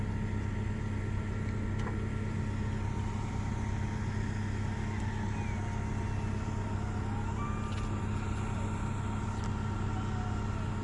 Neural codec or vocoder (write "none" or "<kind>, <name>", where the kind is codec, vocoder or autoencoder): none